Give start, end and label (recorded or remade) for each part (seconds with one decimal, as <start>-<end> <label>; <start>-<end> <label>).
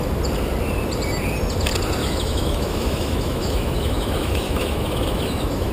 0.0-2.0 recorded; 2.0-5.7 remade